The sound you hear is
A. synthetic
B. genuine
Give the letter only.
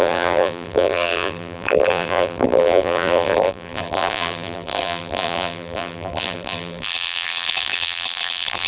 A